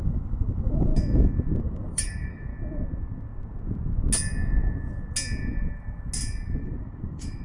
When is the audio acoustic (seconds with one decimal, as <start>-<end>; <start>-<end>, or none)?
0.9-1.6; 2.5-6.6